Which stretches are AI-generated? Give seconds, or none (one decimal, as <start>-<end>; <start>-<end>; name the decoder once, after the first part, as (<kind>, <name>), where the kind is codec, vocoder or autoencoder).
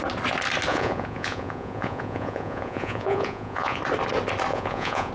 0.7-3.8 (vocoder, Vocos); 4.5-5.1